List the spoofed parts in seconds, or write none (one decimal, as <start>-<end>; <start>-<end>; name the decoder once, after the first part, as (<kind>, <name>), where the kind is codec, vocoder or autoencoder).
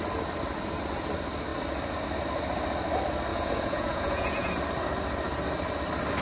3.3-4.5 (vocoder, Vocos)